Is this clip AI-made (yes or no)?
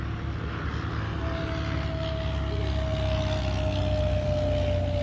no